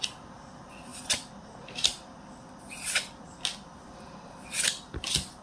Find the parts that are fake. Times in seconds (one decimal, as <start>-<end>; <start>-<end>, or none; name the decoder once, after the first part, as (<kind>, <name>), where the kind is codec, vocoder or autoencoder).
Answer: none